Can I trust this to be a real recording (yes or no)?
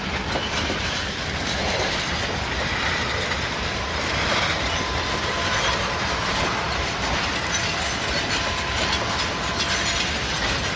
yes